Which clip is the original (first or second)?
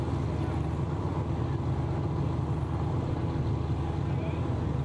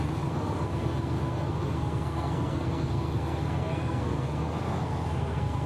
first